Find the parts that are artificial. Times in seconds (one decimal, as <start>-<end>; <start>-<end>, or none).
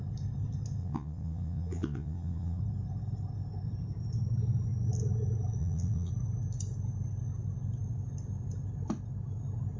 0.8-2.6; 5.6-6.1